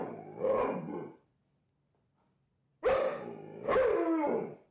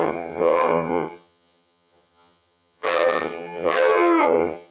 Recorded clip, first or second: first